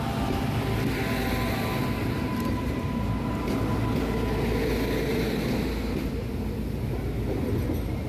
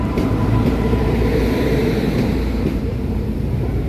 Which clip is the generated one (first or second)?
second